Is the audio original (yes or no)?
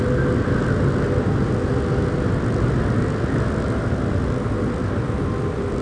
yes